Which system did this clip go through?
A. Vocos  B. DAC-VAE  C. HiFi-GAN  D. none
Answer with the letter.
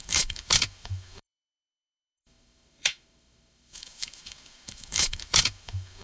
B